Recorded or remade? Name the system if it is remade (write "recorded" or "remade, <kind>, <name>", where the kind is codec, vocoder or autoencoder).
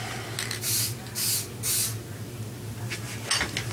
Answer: recorded